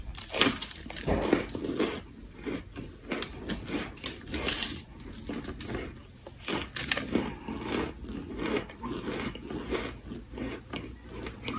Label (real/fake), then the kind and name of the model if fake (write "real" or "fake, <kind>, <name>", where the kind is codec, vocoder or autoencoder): real